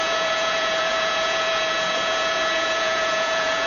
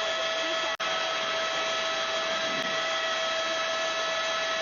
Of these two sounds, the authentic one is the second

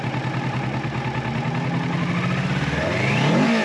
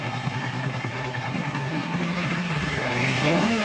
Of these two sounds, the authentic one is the first